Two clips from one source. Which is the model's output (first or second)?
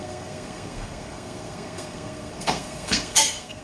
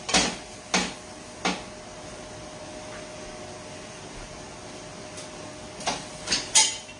first